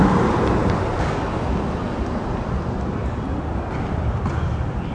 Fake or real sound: real